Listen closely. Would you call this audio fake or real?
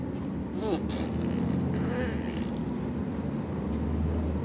real